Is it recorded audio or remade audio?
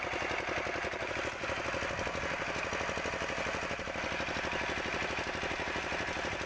recorded